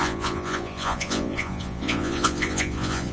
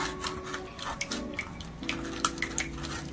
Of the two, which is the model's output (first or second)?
first